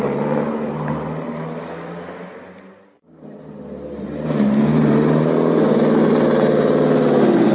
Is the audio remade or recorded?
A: recorded